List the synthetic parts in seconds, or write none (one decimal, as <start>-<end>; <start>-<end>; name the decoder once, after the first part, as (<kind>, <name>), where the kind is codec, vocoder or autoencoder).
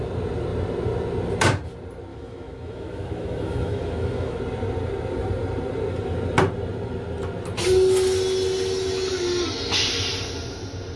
2.1-4.4 (autoencoder, DAC-VAE)